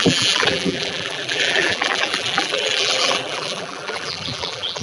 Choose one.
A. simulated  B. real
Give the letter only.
A